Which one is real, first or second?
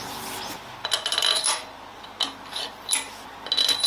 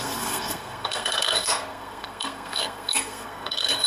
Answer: first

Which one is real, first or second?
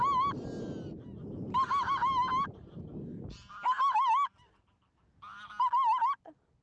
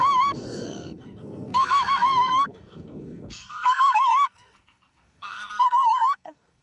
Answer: first